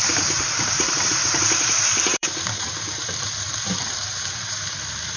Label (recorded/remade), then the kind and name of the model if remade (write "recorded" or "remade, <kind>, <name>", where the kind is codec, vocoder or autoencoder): remade, vocoder, BigVGAN v2